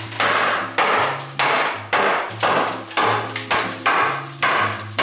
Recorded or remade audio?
recorded